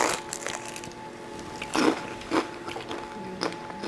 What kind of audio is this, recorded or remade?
recorded